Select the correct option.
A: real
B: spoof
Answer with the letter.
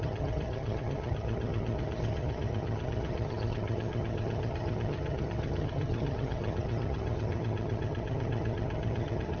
B